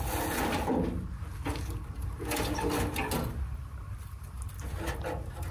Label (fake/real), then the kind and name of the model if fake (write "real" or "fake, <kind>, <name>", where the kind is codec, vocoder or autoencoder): real